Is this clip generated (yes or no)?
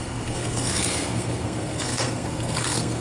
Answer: yes